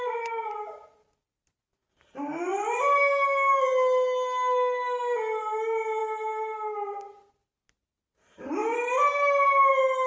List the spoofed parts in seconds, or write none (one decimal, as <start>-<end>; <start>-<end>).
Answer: none

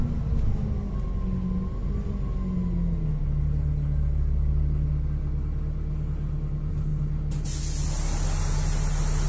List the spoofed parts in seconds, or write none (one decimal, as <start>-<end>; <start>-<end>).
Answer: none

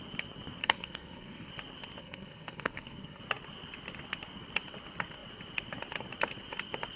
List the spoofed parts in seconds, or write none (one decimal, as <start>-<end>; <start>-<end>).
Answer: 0.6-1.5; 2.0-3.2

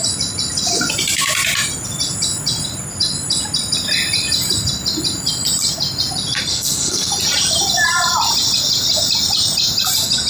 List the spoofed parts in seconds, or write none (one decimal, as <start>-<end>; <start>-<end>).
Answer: 6.5-7.1